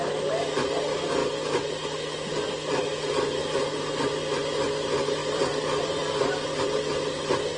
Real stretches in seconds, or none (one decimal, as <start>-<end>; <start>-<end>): 0.0-5.2; 6.2-7.6